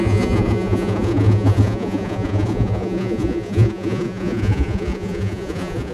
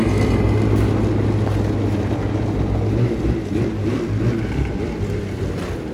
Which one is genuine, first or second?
second